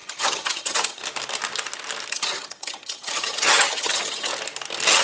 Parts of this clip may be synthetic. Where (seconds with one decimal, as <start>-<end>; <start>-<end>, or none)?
0.0-1.0; 2.1-4.3